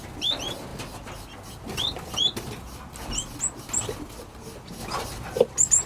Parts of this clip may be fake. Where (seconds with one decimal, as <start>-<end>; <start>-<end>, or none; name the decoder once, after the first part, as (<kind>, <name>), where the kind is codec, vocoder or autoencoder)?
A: none